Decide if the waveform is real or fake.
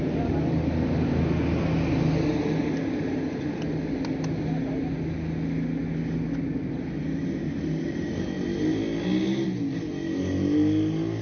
real